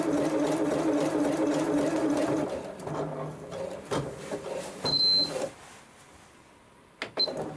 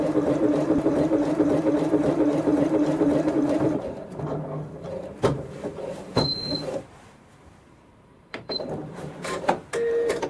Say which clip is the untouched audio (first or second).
first